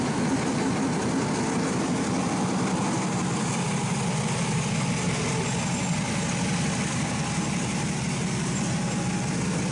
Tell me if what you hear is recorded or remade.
recorded